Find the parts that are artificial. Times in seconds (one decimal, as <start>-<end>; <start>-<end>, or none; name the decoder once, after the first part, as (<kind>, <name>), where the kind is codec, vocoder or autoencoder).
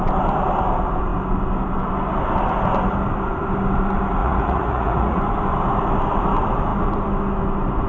4.2-5.2 (vocoder, Vocos)